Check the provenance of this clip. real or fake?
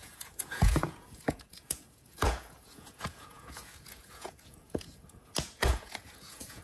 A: fake